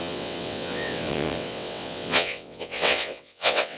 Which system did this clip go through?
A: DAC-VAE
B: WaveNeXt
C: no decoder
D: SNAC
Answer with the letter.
B